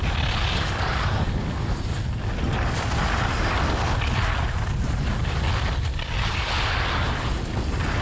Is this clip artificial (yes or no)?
no